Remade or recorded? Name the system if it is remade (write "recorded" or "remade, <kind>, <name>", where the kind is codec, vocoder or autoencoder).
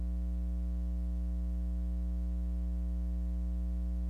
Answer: recorded